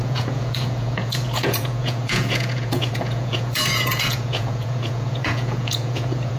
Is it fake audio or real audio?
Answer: fake